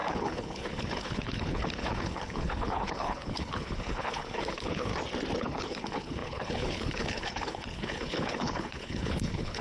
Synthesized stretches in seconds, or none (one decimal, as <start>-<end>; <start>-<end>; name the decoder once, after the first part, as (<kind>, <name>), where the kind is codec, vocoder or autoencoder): 0.0-4.9 (codec, HILCodec); 5.4-9.6